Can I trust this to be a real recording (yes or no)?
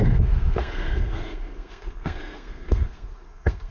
no